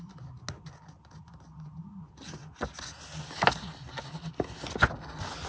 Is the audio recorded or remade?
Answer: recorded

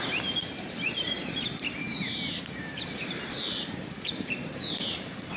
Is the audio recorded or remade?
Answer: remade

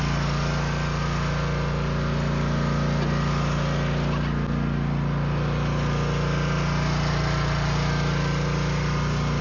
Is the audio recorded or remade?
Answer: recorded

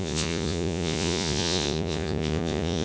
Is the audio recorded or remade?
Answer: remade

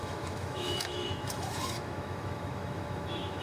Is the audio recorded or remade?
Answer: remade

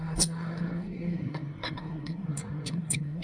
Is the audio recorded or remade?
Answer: remade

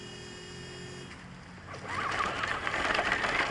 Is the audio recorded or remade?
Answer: recorded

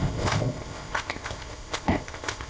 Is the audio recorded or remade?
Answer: remade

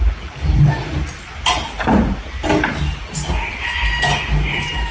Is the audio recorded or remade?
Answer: recorded